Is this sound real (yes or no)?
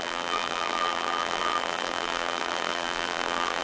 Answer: no